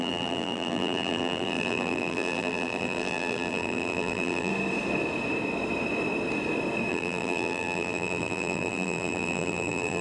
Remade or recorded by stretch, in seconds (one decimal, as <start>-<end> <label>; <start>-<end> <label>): 0.0-4.5 remade; 4.5-6.9 recorded; 6.9-10.0 remade